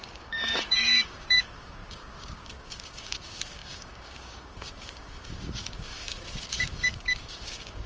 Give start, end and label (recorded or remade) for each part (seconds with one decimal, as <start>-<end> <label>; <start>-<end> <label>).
0.0-7.9 remade